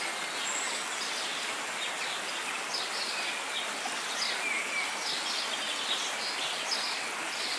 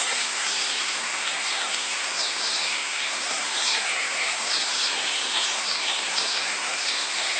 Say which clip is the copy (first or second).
second